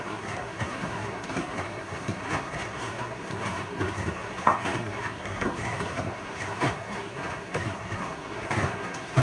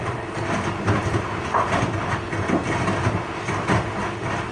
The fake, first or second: first